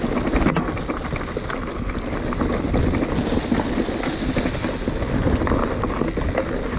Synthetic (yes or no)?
no